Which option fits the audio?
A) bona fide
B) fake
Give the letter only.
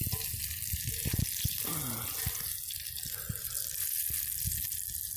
A